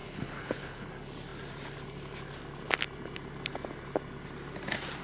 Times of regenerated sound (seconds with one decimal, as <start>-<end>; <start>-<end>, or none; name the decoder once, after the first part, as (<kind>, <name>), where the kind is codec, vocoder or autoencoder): 0.0-0.9 (codec, HILCodec)